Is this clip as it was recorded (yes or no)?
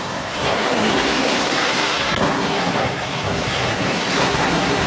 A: no